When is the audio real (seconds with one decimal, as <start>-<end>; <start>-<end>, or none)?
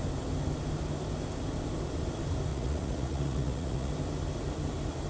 0.0-2.5; 3.9-5.1